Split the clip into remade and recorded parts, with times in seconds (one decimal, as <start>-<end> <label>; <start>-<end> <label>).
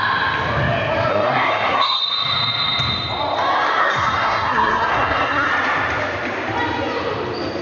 0.0-1.1 recorded; 1.1-2.0 remade; 2.0-3.8 recorded; 3.8-5.5 remade; 5.5-7.6 recorded